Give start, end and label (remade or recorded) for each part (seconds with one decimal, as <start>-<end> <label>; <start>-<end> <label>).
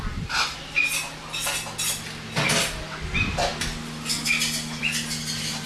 0.0-5.7 recorded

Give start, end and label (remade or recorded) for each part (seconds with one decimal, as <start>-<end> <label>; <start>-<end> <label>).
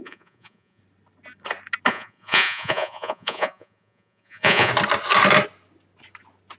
0.0-0.8 remade; 0.8-1.9 recorded; 1.9-4.7 remade; 4.7-6.6 recorded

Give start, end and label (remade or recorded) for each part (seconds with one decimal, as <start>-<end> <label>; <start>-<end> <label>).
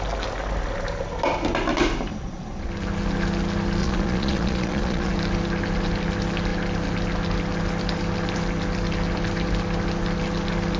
0.0-2.1 recorded; 2.1-2.7 remade; 2.7-3.8 recorded; 3.8-5.1 remade; 5.1-10.8 recorded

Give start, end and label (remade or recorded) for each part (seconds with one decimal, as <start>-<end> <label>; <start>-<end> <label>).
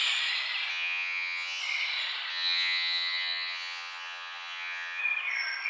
0.0-0.7 recorded; 0.7-1.6 remade; 1.6-2.3 recorded; 2.3-5.0 remade; 5.0-5.7 recorded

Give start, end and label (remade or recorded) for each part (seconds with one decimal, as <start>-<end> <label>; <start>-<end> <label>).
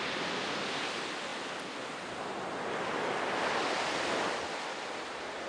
0.0-5.5 recorded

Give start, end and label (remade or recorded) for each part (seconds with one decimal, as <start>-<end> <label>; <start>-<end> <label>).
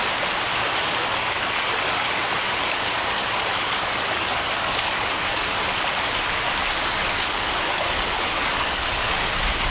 0.0-0.5 recorded; 0.5-5.4 remade; 5.4-6.6 recorded; 6.6-9.7 remade